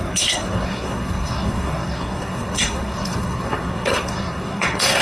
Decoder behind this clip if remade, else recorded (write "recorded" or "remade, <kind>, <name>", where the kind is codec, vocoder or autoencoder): remade, codec, SNAC